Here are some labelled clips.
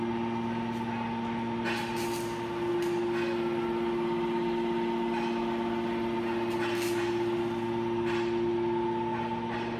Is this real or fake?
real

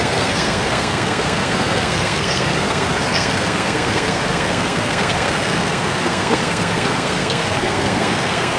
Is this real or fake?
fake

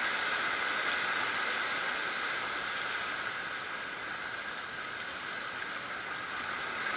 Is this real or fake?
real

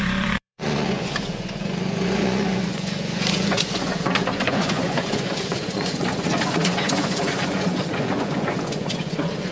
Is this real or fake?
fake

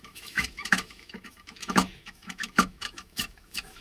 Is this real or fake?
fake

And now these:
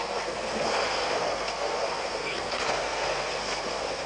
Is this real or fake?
fake